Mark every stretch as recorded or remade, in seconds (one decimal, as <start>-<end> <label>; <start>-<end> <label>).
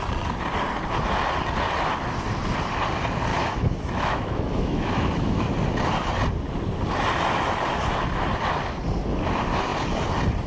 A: 0.0-3.3 recorded; 3.3-5.5 remade; 5.5-10.5 recorded